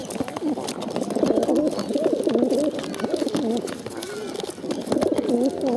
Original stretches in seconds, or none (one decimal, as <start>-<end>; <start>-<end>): 0.0-5.8